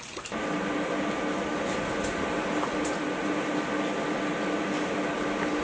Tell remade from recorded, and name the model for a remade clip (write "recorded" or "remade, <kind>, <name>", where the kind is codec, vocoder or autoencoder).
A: recorded